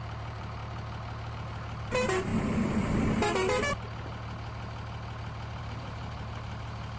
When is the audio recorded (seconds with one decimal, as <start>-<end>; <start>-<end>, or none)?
0.6-1.3; 2.3-5.6